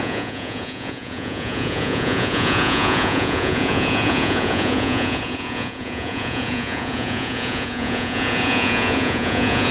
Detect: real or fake fake